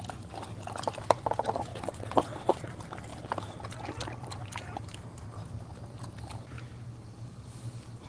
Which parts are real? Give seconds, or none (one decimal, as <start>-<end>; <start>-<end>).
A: 0.0-1.7; 2.7-8.1